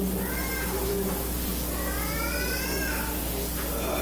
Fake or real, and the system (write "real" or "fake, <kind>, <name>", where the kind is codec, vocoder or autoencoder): real